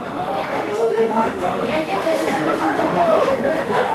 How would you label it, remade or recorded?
remade